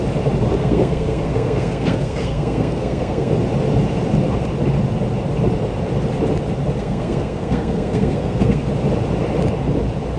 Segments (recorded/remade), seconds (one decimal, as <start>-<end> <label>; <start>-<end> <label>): 0.0-0.6 recorded; 0.6-3.3 remade; 3.3-6.8 recorded; 6.8-8.7 remade; 8.7-10.2 recorded